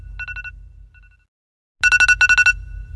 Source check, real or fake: real